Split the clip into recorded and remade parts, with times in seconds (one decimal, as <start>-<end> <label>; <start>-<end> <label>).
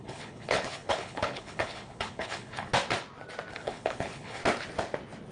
0.0-2.7 remade; 2.7-3.5 recorded; 3.5-4.4 remade; 4.4-5.3 recorded